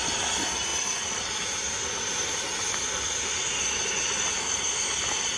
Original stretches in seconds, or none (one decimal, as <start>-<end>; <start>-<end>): 0.0-5.4